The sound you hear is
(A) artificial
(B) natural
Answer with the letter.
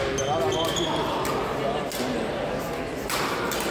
B